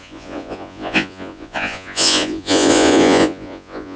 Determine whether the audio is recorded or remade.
remade